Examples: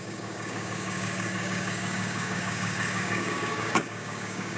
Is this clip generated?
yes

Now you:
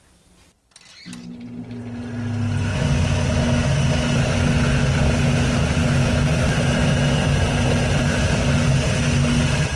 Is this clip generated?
no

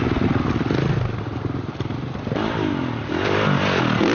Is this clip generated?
no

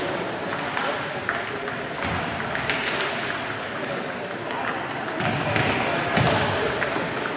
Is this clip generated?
no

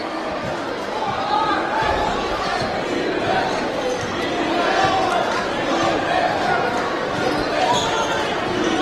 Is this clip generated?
no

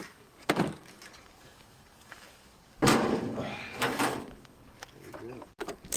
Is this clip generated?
yes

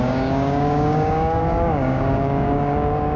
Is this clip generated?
yes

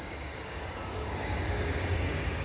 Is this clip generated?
yes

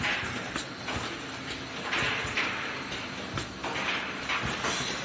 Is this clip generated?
no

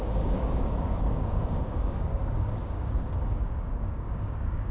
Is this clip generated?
yes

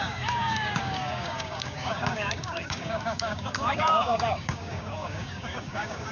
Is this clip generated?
yes